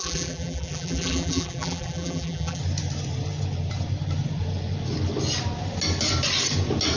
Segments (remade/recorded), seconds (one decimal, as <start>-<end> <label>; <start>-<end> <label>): 0.0-2.6 remade; 2.6-7.0 recorded